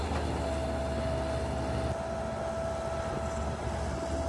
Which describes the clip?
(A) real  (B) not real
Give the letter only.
A